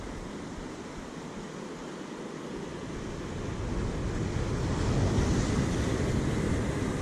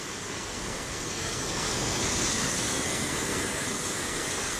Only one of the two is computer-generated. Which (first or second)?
second